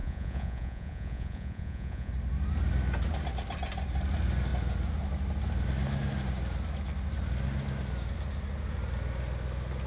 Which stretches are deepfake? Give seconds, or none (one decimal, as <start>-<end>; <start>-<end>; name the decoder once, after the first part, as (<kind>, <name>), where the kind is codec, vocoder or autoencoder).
0.0-2.1 (vocoder, Vocos)